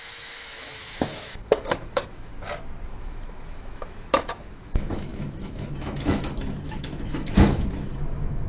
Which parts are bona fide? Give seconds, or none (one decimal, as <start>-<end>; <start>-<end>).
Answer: 2.3-3.0

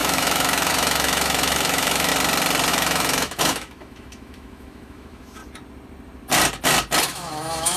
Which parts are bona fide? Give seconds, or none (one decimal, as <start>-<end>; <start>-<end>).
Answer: 2.1-2.7; 5.4-7.0

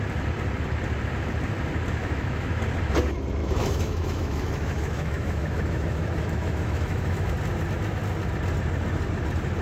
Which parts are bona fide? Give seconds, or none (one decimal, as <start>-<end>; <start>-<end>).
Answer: 0.0-2.0; 2.6-3.4; 7.3-9.6

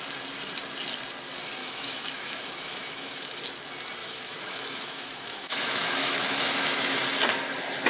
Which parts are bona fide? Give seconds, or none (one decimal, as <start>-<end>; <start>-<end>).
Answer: 0.0-1.6; 3.4-4.0; 6.9-7.9

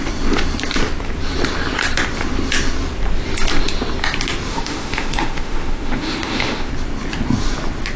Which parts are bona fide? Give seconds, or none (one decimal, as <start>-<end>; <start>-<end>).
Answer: 0.0-4.5; 6.7-8.0

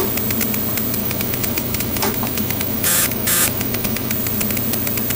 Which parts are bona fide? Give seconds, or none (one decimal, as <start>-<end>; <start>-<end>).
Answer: 0.0-1.0; 4.1-5.2

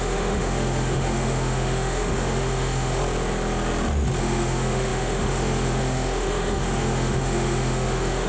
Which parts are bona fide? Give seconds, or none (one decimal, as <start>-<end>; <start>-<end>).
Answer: 3.0-4.2